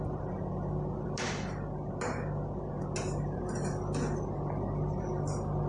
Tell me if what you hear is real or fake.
real